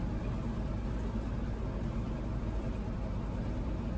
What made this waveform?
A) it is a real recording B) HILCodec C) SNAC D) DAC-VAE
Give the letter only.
A